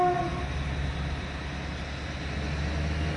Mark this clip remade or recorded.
recorded